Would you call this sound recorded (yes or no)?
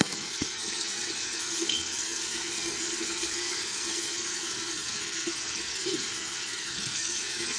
no